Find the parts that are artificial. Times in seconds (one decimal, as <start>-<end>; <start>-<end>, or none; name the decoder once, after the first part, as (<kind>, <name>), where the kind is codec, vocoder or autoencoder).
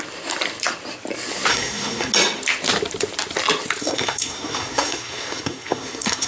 1.5-2.1 (codec, SNAC); 3.8-6.3